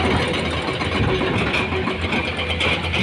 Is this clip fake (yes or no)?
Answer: no